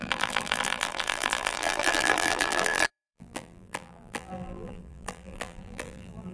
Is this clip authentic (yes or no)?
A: no